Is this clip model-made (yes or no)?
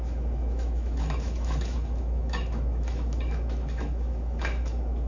yes